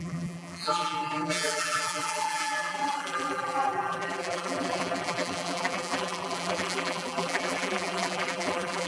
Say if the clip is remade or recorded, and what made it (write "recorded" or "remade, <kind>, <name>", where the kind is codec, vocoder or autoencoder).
remade, vocoder, BigVGAN v2